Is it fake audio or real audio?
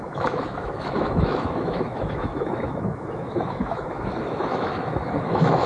fake